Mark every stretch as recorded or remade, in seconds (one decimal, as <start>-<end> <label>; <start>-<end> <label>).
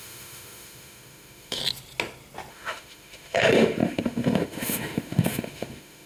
0.0-1.6 remade; 1.6-2.5 recorded; 2.5-6.1 remade